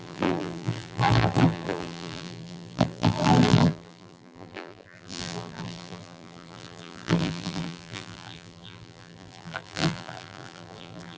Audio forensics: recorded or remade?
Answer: remade